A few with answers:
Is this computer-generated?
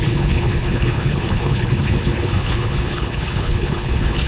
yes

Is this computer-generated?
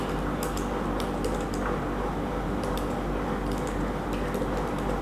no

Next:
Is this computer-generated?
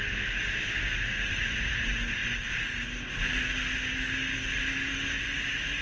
no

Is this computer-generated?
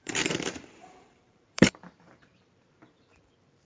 yes